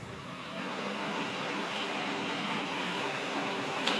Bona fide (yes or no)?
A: no